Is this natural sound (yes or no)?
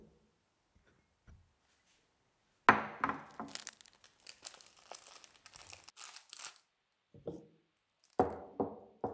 yes